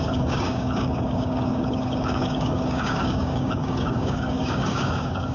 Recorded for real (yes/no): no